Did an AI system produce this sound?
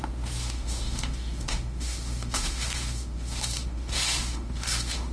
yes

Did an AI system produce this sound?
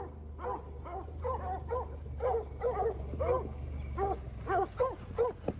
no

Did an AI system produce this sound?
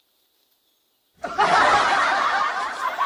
no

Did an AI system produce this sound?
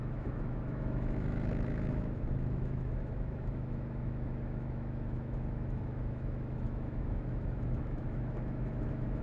yes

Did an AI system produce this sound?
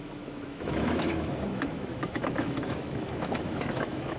yes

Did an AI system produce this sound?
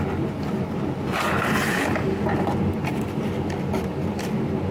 no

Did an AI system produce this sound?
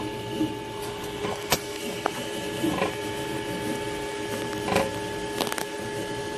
no